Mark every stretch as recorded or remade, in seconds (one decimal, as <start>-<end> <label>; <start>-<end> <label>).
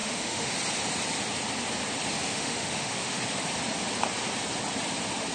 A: 0.0-0.5 remade; 0.5-2.3 recorded; 2.3-3.2 remade; 3.2-5.3 recorded